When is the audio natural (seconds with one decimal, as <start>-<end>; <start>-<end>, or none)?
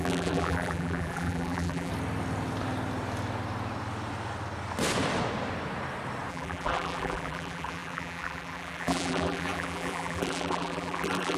1.9-6.3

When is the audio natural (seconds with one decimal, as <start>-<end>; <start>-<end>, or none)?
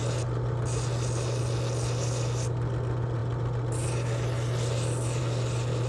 0.0-5.9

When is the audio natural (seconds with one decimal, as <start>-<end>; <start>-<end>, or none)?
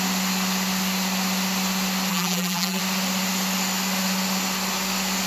0.0-2.1; 2.8-5.3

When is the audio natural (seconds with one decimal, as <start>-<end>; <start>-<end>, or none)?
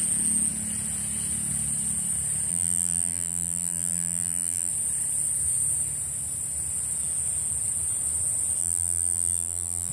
0.0-2.5; 4.7-8.6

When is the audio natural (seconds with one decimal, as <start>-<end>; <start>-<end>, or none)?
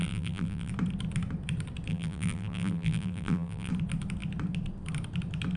0.7-1.9; 3.7-5.6